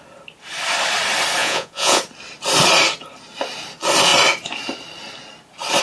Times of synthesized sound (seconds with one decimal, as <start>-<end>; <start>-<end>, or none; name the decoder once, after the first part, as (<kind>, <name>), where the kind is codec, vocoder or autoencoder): 1.4-2.0 (vocoder, Vocos)